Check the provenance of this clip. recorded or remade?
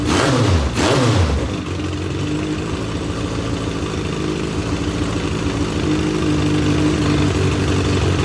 recorded